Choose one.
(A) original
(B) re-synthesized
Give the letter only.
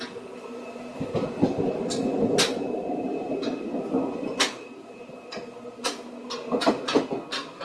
A